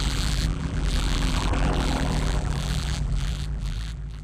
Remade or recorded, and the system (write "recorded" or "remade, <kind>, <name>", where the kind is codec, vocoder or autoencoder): remade, vocoder, BigVGAN v2